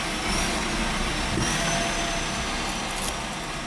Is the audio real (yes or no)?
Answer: yes